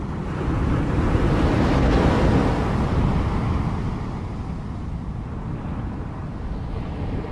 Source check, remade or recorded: recorded